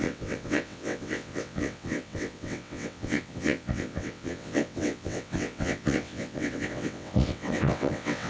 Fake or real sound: fake